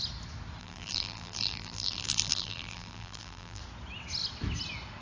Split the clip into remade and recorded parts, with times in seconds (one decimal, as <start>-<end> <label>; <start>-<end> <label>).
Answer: 0.0-0.6 recorded; 0.6-3.6 remade; 3.6-5.0 recorded